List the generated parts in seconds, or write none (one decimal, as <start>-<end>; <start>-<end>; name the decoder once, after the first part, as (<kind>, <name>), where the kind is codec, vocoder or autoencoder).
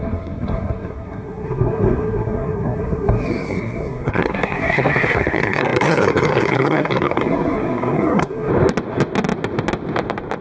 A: 0.0-8.5 (codec, SNAC)